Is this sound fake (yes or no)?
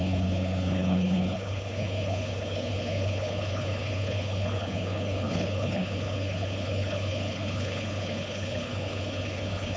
yes